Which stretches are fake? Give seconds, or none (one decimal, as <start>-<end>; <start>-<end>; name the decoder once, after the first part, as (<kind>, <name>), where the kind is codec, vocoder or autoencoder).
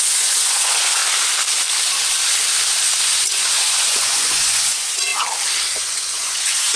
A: 0.0-1.0 (vocoder, Vocos); 3.0-5.1; 5.7-6.8